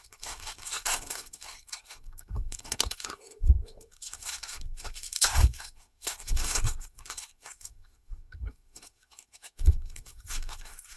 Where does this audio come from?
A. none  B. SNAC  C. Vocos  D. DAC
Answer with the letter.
B